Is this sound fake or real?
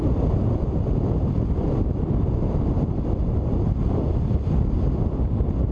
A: real